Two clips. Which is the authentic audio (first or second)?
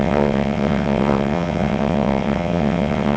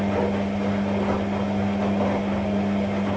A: second